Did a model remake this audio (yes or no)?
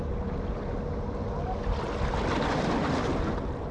no